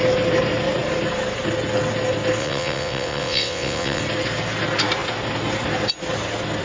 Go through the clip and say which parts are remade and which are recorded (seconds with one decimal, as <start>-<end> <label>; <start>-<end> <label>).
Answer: 0.0-2.4 recorded; 2.4-4.0 remade; 4.0-6.6 recorded